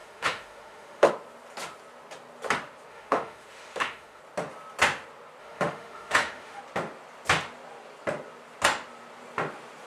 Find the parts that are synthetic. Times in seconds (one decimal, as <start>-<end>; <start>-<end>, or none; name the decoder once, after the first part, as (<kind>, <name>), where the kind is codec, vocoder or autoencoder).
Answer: 0.0-1.1 (autoencoder, DAC-VAE); 2.9-4.2; 5.4-6.6

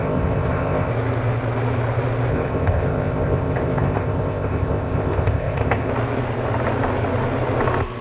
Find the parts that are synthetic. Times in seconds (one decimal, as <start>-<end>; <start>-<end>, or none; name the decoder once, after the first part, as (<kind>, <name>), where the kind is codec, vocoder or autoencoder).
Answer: 0.0-0.9 (codec, ZipCodec); 2.3-5.9

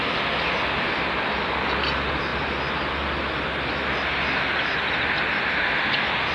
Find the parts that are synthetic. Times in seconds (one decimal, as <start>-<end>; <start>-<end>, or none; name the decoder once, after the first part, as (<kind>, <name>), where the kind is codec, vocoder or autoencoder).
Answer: 2.3-4.9 (vocoder, BigVGAN v2)

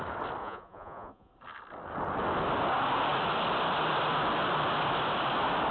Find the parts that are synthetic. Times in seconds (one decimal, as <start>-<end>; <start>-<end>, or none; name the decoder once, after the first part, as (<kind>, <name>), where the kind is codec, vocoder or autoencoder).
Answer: 0.4-1.3 (vocoder, Vocos)

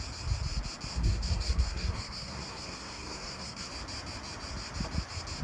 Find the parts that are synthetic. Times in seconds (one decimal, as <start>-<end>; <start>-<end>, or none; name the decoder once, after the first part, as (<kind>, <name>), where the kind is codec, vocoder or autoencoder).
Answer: 0.9-3.7 (codec, SNAC)

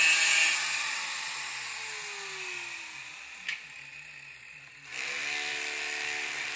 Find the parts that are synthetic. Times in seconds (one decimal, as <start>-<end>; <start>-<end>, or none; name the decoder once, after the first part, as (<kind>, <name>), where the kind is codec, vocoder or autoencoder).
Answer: none

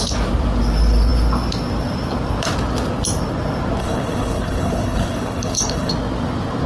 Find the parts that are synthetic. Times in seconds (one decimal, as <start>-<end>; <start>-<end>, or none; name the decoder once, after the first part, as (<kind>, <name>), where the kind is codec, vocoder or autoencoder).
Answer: 3.8-5.9 (codec, HILCodec)